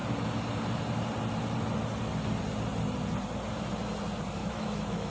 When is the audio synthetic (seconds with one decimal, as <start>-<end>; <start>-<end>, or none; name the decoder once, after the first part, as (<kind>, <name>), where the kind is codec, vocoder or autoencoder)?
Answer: 4.4-5.1 (autoencoder, DAC-VAE)